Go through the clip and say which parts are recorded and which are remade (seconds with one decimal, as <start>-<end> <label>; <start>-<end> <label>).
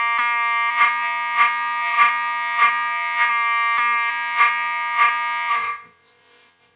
0.0-0.7 recorded; 0.7-3.3 remade; 3.3-4.1 recorded; 4.1-6.8 remade